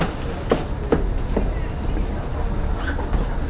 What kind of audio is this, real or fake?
real